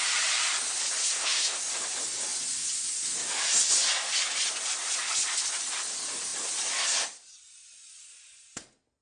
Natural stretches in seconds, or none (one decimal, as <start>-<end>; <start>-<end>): 0.0-1.0; 1.6-9.0